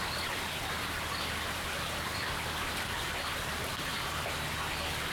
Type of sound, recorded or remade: recorded